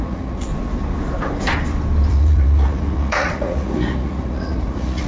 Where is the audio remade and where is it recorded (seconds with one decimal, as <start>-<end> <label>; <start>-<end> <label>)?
0.0-0.5 remade; 0.5-2.1 recorded; 2.1-5.1 remade